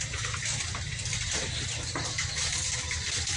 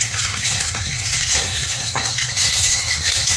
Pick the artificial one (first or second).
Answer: second